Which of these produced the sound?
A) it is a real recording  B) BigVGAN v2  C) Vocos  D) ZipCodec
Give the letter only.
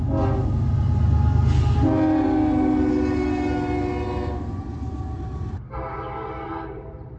A